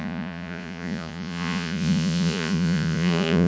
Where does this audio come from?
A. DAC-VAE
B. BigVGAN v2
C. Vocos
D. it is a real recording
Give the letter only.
C